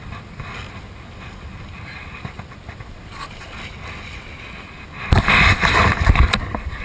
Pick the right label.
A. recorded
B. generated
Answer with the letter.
A